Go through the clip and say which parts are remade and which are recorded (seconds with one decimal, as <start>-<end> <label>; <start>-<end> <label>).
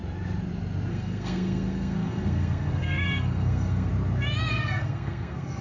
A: 0.0-0.9 recorded; 0.9-3.9 remade; 3.9-4.5 recorded; 4.5-5.6 remade